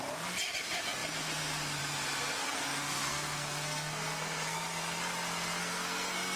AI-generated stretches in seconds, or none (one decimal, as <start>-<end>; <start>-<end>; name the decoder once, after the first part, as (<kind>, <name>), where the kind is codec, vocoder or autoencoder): 2.4-5.0 (codec, SNAC); 5.6-6.4